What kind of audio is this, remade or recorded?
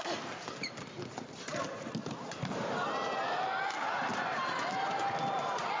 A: recorded